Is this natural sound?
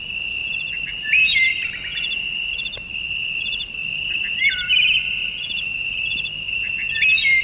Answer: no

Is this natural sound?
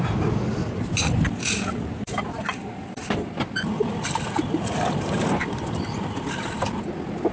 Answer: no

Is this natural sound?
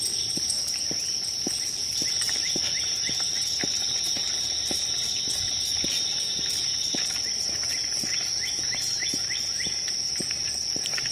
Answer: yes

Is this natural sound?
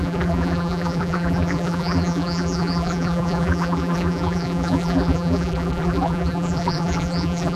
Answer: no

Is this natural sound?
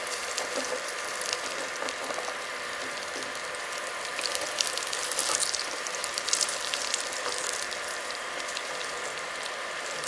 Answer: no